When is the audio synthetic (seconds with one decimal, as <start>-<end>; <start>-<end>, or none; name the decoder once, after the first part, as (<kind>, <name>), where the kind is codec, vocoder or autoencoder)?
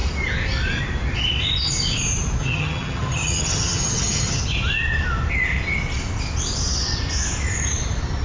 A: 2.4-4.4 (vocoder, HiFi-GAN)